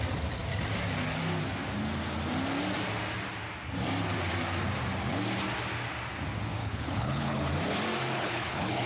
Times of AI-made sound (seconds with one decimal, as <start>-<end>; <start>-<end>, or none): 6.6-7.5; 8.1-8.9